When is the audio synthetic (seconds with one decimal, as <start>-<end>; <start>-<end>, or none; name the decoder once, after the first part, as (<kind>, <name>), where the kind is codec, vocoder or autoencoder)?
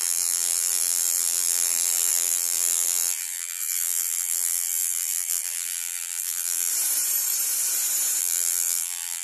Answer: 0.0-6.7 (vocoder, BigVGAN v2); 8.2-9.2